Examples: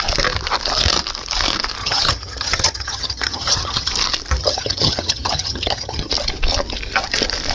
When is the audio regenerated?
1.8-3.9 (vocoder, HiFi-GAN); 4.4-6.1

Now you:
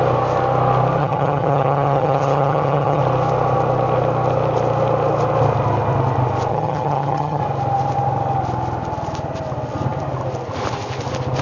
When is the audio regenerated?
1.0-3.0 (vocoder, HiFi-GAN); 6.5-7.4

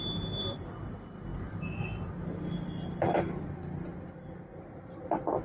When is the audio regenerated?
none

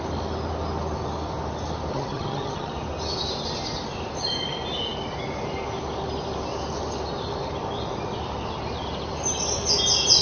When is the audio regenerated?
1.9-2.7 (vocoder, HiFi-GAN)